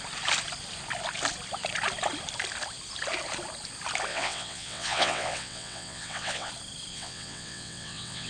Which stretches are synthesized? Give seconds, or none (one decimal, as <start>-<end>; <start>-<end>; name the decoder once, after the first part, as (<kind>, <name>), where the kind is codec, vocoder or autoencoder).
4.1-6.5 (vocoder, WaveNeXt); 6.9-8.3

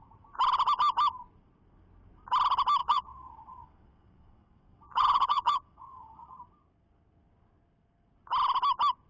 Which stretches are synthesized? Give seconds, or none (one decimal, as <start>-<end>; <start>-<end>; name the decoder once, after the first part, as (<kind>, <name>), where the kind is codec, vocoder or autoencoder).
2.8-6.4 (vocoder, WaveNeXt)

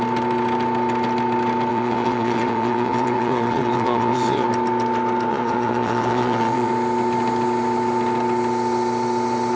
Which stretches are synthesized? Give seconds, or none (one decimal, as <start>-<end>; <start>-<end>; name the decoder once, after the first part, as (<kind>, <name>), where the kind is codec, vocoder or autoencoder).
1.7-4.5 (vocoder, WaveNeXt); 5.3-6.7

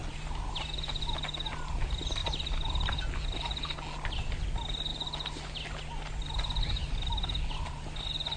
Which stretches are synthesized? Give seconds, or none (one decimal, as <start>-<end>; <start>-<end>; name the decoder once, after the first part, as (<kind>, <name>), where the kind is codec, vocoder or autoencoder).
none

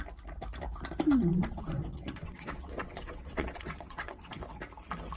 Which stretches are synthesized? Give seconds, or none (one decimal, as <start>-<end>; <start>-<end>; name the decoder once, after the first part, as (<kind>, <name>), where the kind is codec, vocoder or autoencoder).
1.3-4.4 (vocoder, WaveNeXt)